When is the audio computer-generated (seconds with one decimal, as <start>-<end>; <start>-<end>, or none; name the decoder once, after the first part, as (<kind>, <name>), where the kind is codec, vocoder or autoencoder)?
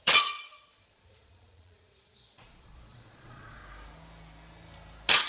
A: 0.0-3.6 (vocoder, Vocos)